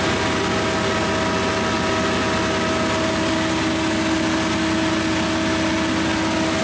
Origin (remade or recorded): recorded